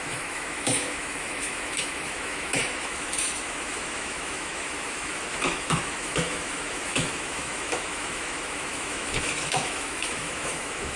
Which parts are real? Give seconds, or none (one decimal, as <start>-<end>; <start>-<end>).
none